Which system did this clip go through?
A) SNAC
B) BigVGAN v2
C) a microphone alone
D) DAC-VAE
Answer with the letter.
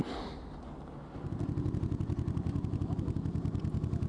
C